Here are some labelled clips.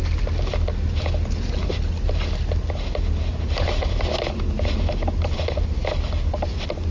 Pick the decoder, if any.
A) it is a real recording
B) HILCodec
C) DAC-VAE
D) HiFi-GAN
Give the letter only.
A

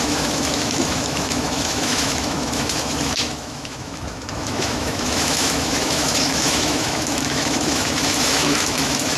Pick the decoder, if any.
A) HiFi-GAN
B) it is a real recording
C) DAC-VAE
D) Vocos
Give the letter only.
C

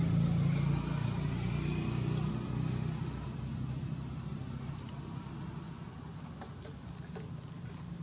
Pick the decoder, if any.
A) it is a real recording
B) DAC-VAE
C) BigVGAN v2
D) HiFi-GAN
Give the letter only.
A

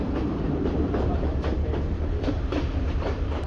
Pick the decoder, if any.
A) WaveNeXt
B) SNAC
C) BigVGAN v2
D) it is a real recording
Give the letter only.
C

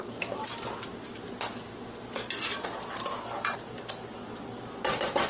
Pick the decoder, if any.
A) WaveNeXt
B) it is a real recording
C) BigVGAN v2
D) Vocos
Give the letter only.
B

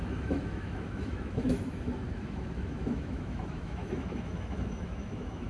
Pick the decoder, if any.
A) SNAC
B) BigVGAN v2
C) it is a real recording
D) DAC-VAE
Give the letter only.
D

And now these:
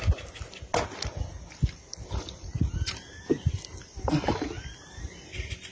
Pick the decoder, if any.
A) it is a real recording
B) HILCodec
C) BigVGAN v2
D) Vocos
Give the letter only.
A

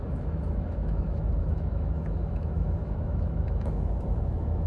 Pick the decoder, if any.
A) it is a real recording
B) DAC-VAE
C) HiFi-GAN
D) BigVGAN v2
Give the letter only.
B